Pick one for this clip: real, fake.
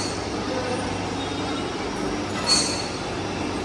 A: real